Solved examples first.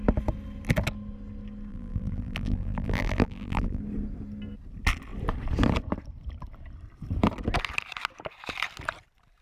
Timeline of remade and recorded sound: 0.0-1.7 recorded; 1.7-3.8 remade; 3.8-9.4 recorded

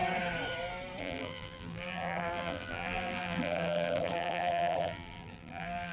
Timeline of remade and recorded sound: 0.0-1.0 recorded; 1.0-5.9 remade

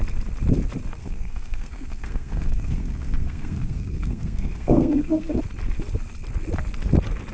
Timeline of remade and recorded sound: 0.0-1.0 recorded; 1.0-5.4 remade; 5.4-7.3 recorded

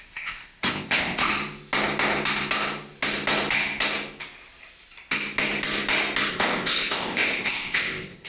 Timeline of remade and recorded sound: 0.0-1.3 remade; 1.3-6.3 recorded; 6.3-8.3 remade

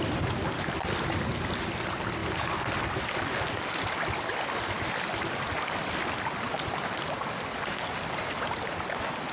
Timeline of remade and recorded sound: 0.0-9.3 recorded

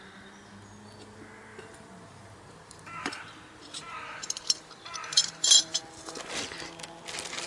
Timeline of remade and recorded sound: 0.0-1.5 recorded; 1.5-5.8 remade; 5.8-7.5 recorded